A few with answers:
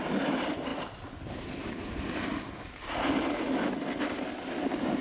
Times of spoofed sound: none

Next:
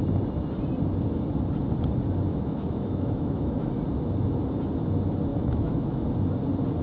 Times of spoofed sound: 2.3-3.7 (autoencoder, DAC-VAE); 5.3-6.1

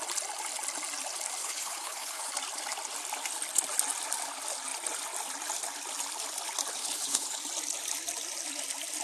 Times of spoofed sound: 1.4-2.3 (codec, HILCodec); 6.8-7.4

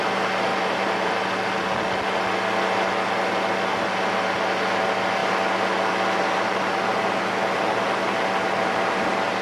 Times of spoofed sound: 0.5-1.1 (vocoder, BigVGAN v2)

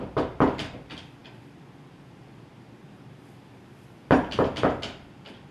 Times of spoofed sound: none